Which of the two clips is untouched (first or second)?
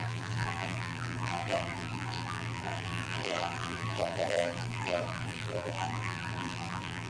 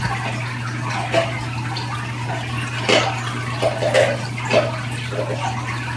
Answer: second